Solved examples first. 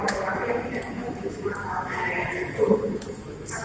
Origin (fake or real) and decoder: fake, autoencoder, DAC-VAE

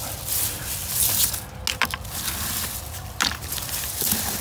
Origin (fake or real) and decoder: real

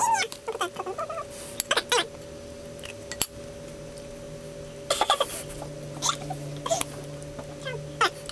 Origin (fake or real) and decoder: real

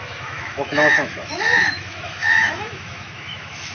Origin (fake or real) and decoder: fake, autoencoder, DAC-VAE